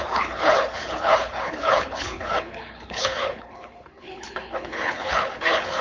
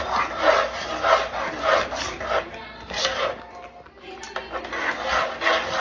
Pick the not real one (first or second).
first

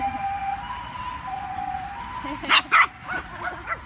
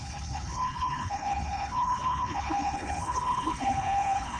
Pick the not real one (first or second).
second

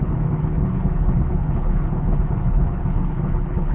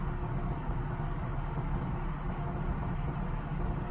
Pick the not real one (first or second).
first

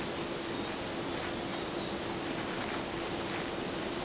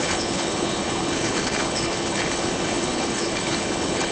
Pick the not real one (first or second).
second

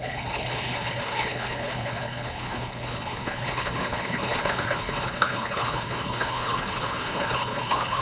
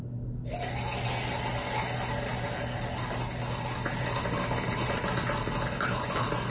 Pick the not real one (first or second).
first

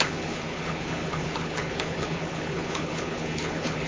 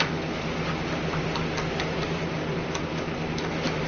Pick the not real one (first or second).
first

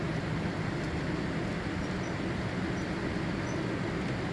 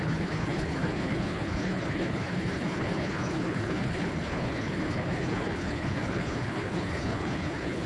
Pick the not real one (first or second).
second